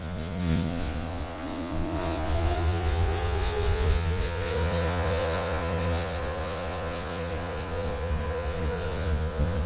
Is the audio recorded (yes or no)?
no